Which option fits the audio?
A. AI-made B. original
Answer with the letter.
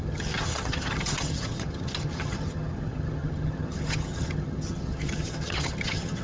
A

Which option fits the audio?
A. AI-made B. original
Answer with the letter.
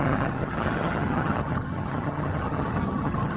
A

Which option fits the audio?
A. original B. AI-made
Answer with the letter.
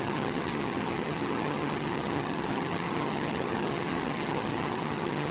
B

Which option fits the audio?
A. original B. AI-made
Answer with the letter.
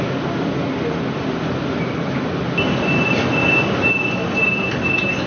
A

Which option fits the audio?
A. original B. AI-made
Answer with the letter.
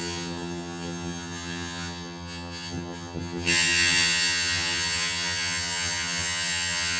B